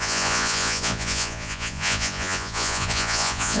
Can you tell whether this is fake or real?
fake